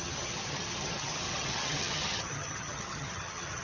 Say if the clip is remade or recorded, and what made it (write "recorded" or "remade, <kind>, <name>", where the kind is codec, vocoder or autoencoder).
remade, vocoder, HiFi-GAN